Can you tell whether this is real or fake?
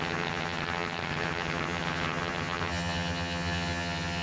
fake